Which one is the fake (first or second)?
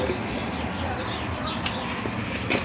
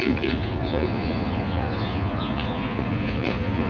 second